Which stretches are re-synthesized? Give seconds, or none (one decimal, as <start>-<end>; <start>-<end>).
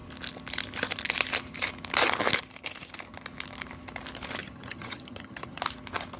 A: 4.4-5.6